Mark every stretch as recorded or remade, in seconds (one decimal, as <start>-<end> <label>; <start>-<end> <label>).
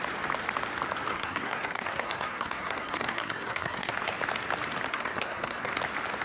0.0-1.1 recorded; 1.1-3.9 remade; 3.9-4.9 recorded; 4.9-5.7 remade; 5.7-6.2 recorded